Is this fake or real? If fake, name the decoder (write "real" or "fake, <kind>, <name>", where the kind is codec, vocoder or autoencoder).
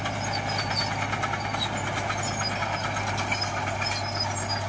real